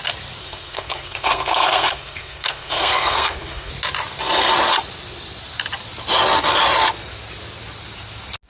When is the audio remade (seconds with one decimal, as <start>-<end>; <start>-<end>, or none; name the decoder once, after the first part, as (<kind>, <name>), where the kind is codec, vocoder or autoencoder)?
0.4-3.7 (codec, SNAC)